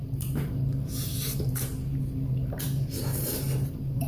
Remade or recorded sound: remade